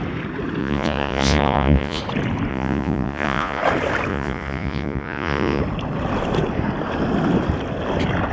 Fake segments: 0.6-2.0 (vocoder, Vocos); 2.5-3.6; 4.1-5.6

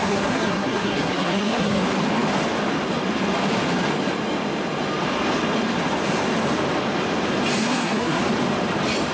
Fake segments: 0.0-1.8 (codec, SNAC); 7.6-8.2

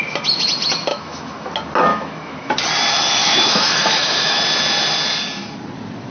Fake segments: 0.9-1.5 (autoencoder, DAC-VAE); 1.9-2.5; 3.2-4.4

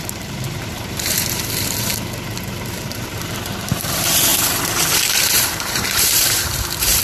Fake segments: 0.0-1.9 (vocoder, BigVGAN v2); 2.7-4.3; 4.9-7.0

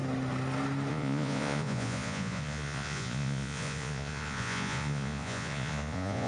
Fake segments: 0.9-6.3 (vocoder, Vocos)

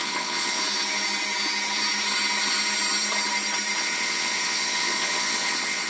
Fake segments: 0.0-0.6 (vocoder, Vocos); 3.8-5.9